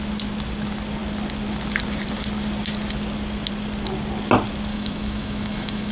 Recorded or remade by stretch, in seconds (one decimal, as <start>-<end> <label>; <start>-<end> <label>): 0.0-4.7 recorded; 4.7-5.9 remade